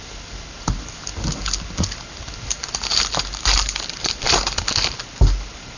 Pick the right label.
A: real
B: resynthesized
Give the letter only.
A